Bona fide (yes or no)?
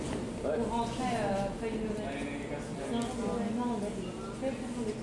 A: yes